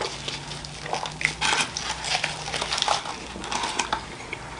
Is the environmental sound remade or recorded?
recorded